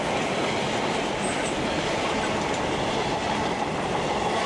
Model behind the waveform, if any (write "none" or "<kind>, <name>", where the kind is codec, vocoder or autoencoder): none